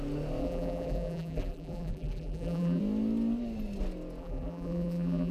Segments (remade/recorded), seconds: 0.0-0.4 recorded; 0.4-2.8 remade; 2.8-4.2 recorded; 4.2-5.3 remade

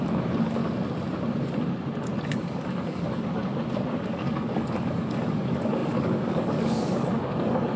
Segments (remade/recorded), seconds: 0.0-0.6 remade; 0.6-2.3 recorded; 2.3-3.4 remade; 3.4-3.9 recorded; 3.9-7.8 remade

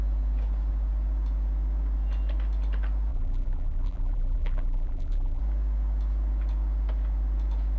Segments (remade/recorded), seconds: 0.0-3.1 recorded; 3.1-5.4 remade; 5.4-7.8 recorded

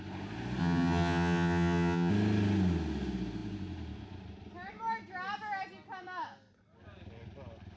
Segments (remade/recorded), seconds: 0.0-0.6 recorded; 0.6-2.1 remade; 2.1-7.8 recorded

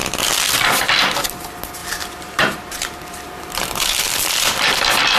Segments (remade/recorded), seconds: 0.0-1.8 recorded; 1.8-4.8 remade; 4.8-5.2 recorded